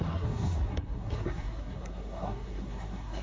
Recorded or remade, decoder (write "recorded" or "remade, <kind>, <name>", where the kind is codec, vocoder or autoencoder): remade, codec, SNAC